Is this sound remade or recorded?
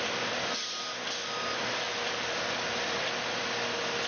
recorded